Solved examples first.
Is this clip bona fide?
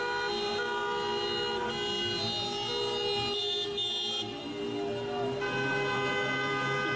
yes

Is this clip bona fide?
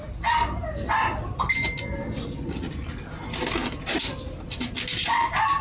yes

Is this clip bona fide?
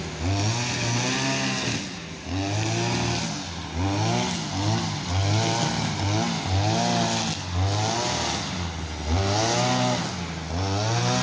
yes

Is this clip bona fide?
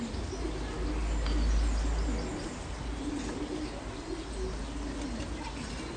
yes